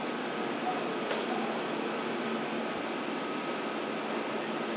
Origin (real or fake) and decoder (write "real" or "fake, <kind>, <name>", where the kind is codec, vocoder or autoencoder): real